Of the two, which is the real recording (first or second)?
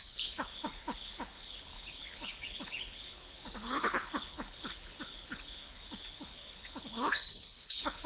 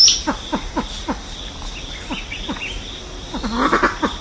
second